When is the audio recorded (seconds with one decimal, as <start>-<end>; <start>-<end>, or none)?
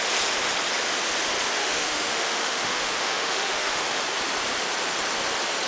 0.0-1.6; 4.0-5.7